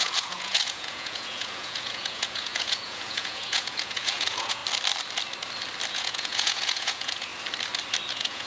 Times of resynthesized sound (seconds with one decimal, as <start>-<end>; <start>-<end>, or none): 0.0-4.6; 5.9-7.3; 8.1-8.5